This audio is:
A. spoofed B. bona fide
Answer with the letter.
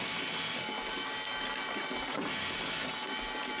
B